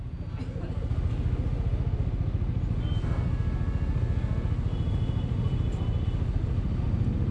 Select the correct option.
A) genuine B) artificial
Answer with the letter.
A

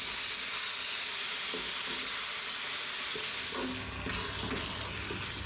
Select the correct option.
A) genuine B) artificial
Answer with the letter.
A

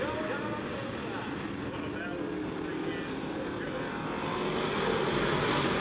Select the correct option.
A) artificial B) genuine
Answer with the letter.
B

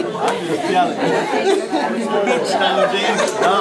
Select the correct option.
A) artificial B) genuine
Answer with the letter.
B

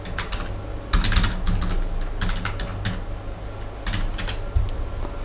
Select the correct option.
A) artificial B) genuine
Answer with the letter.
B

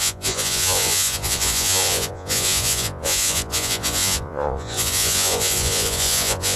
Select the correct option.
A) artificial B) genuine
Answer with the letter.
A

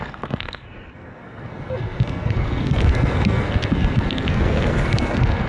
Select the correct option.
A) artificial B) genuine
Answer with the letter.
A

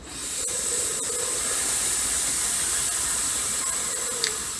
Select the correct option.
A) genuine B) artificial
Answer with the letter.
A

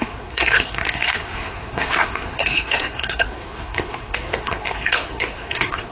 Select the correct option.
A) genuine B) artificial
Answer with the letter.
B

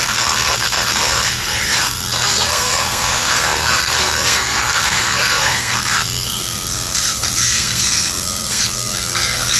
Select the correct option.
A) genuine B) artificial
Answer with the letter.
B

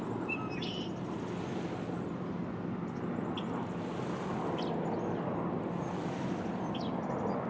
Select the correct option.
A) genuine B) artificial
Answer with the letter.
A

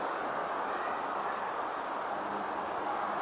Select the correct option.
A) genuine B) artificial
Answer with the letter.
A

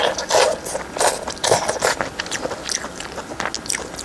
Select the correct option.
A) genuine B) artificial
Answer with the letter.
A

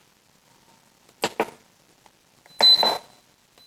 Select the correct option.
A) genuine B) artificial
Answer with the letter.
A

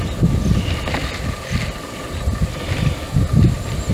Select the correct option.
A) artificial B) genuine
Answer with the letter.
B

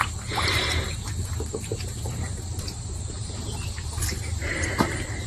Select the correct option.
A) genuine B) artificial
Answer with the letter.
B